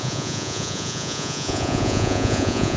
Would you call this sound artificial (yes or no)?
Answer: yes